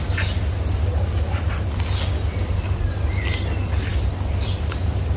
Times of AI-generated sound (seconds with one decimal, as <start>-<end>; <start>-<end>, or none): none